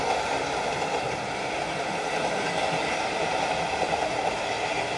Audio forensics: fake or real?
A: real